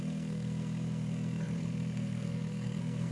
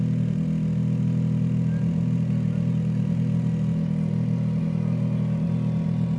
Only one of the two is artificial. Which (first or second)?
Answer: first